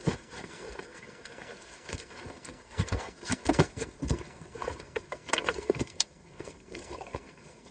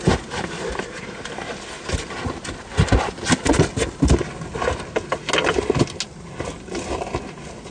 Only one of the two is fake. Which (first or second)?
first